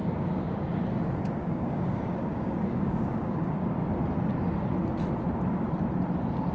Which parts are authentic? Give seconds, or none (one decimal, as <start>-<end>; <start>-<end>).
0.6-1.4; 3.7-6.5